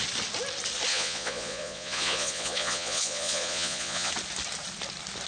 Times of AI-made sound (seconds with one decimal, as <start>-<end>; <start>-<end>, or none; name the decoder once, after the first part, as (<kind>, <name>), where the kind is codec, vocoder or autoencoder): 0.9-4.1 (vocoder, Vocos)